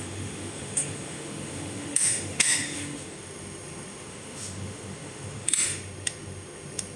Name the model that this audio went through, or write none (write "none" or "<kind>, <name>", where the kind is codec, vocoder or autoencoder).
autoencoder, DAC-VAE